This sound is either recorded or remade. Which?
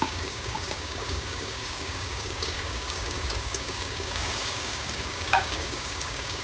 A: remade